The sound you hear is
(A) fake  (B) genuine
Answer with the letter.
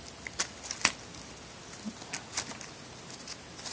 B